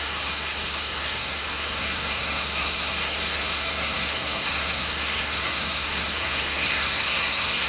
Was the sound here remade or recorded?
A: remade